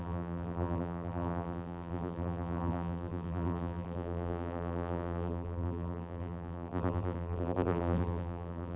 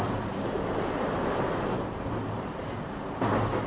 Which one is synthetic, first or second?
first